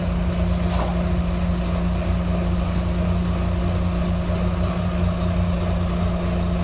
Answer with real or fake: real